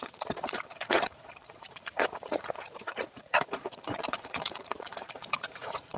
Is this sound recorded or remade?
remade